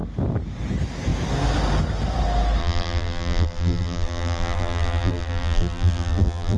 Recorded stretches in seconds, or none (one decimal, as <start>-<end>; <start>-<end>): 0.0-2.6